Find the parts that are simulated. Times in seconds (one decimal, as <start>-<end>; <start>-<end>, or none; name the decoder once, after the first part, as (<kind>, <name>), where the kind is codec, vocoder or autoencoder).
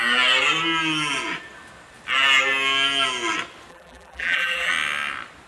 3.7-4.7 (vocoder, BigVGAN v2)